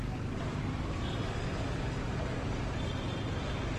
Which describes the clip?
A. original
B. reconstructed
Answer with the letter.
A